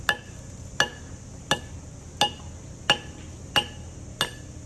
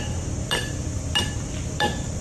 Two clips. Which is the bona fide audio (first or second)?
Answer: first